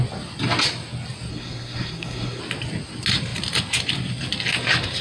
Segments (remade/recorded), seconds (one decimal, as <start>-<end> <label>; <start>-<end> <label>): 0.0-1.3 recorded; 1.3-2.4 remade; 2.4-5.0 recorded